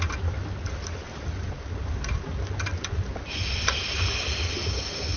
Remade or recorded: recorded